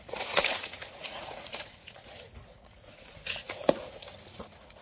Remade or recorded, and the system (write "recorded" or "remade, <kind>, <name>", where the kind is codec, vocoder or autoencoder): remade, vocoder, Vocos